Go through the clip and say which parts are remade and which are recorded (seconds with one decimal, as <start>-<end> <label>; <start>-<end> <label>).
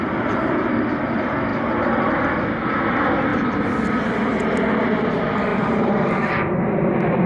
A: 0.0-3.3 recorded; 3.3-4.2 remade; 4.2-5.5 recorded; 5.5-6.3 remade; 6.3-7.3 recorded